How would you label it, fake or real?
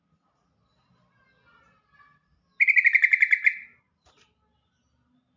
real